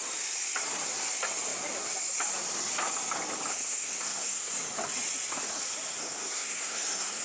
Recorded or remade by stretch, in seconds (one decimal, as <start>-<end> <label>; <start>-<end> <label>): 0.0-3.5 recorded; 3.5-4.5 remade; 4.5-6.0 recorded; 6.0-7.2 remade